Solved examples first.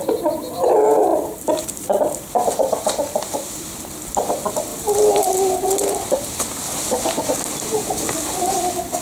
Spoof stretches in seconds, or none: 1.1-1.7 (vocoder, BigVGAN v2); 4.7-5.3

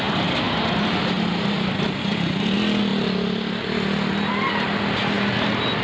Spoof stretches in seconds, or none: 1.3-2.0 (vocoder, BigVGAN v2)

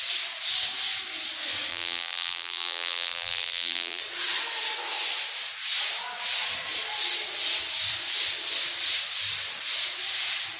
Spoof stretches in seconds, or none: 1.7-4.0 (vocoder, BigVGAN v2)

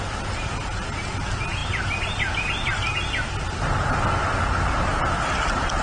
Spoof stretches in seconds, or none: none

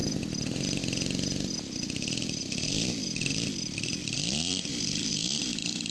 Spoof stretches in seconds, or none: 4.0-4.8 (vocoder, BigVGAN v2)

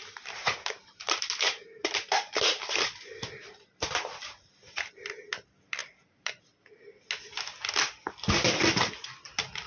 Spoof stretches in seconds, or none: 0.0-5.2 (vocoder, BigVGAN v2); 5.8-6.4

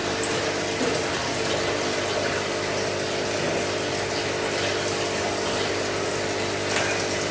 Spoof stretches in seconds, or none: none

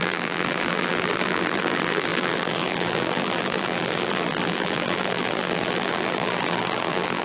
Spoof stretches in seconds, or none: 0.0-7.2 (vocoder, BigVGAN v2)